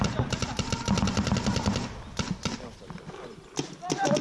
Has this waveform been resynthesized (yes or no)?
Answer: no